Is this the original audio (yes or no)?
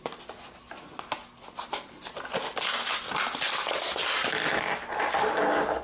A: yes